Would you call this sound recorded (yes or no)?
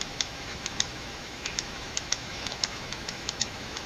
no